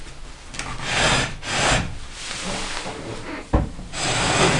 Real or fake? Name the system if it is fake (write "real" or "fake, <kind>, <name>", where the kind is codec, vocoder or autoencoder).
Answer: real